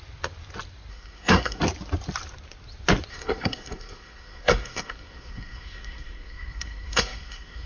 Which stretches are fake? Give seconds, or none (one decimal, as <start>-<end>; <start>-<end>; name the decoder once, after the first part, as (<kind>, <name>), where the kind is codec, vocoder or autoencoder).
0.9-1.6 (codec, SNAC); 3.1-7.7